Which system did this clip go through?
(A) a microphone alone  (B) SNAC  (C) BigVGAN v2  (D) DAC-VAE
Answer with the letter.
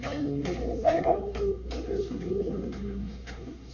B